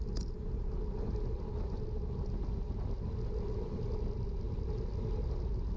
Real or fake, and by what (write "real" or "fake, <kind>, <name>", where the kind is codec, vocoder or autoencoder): real